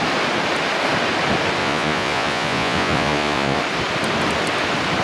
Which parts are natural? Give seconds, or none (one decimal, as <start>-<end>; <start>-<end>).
0.0-1.6; 3.6-5.0